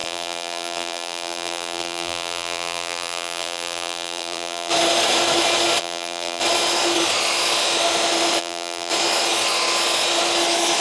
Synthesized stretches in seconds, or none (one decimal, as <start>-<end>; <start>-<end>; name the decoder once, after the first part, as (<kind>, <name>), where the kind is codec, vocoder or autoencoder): 0.0-4.7 (vocoder, BigVGAN v2); 5.8-6.4; 8.4-8.9